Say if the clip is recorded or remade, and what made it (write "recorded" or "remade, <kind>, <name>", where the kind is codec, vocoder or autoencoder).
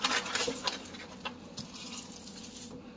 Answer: recorded